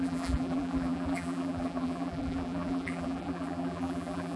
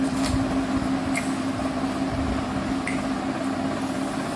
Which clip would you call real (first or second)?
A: second